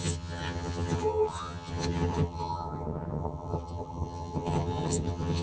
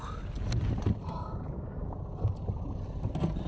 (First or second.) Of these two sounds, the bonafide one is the second